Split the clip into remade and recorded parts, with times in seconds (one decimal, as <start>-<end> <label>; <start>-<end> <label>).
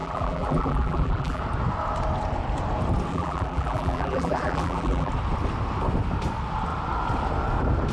0.0-1.4 remade; 1.4-3.1 recorded; 3.1-5.1 remade; 5.1-7.9 recorded